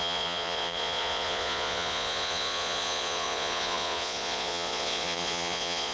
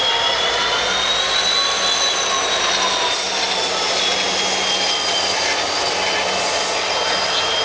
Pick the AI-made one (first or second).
first